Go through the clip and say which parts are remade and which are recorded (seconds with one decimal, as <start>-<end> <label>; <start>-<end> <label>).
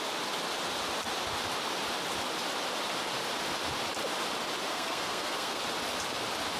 0.0-4.7 recorded; 4.7-5.6 remade; 5.6-6.6 recorded